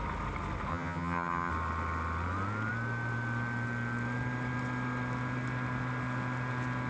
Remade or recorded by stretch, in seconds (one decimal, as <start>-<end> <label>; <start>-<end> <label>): 0.0-0.7 recorded; 0.7-1.5 remade; 1.5-6.9 recorded